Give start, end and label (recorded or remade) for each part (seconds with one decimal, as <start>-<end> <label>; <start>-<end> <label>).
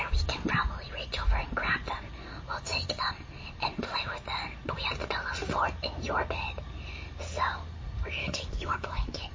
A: 0.0-8.2 recorded; 8.2-9.3 remade